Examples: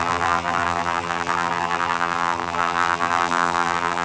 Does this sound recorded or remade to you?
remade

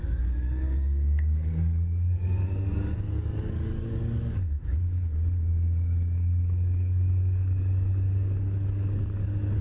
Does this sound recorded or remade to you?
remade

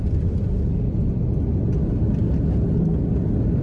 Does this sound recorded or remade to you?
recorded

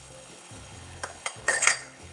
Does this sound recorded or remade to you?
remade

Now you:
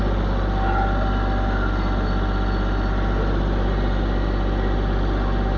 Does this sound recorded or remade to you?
recorded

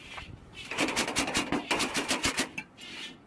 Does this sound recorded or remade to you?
recorded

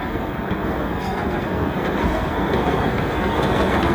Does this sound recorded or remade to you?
remade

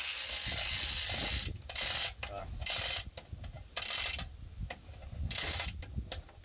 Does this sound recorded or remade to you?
recorded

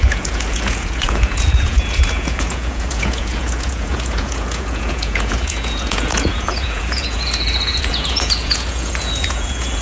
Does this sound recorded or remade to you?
remade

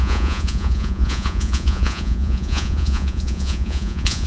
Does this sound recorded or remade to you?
remade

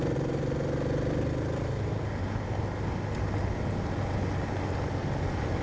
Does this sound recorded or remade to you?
recorded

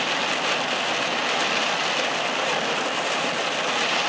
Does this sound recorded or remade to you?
recorded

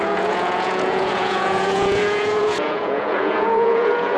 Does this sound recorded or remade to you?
remade